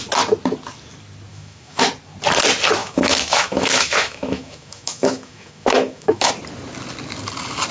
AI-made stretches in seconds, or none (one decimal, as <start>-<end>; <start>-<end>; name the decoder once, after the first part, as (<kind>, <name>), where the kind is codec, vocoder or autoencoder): 1.3-1.9 (autoencoder, DAC-VAE); 2.8-6.3